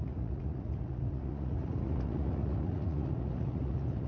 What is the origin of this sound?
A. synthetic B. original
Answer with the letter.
A